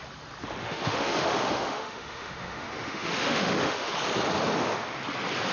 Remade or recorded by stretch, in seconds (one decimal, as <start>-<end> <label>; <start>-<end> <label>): 0.0-0.6 recorded; 0.6-3.9 remade; 3.9-5.5 recorded